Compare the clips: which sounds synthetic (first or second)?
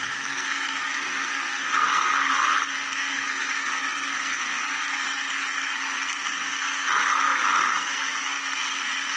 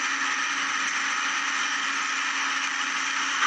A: first